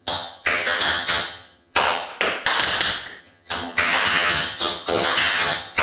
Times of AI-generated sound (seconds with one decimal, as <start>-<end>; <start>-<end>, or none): 0.0-2.1; 3.2-5.8